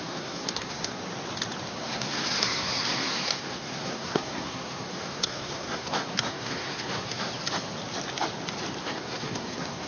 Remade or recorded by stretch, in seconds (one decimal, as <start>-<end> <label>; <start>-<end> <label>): 0.0-1.0 remade; 1.0-1.7 recorded; 1.7-7.3 remade; 7.3-8.8 recorded; 8.8-9.9 remade